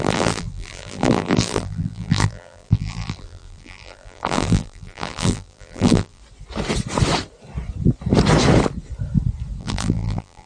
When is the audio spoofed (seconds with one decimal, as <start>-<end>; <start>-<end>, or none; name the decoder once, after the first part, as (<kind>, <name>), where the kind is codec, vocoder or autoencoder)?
0.0-6.2 (vocoder, BigVGAN v2); 9.6-10.5